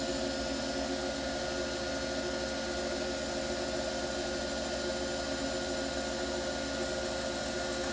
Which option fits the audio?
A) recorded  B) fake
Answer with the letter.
A